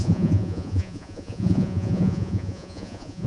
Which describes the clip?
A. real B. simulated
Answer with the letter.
B